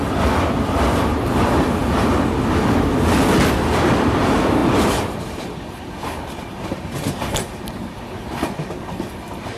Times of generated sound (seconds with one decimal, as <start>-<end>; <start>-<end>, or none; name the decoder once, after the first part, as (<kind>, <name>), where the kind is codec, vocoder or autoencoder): none